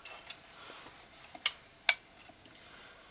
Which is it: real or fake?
real